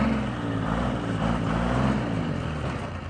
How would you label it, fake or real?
real